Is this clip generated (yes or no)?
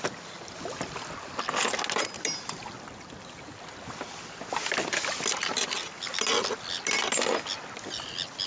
no